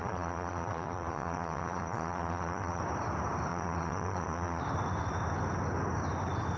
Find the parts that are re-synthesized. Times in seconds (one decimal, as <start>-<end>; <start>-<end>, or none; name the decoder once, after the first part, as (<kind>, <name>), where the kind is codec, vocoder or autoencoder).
0.0-2.8 (vocoder, Vocos); 3.5-4.6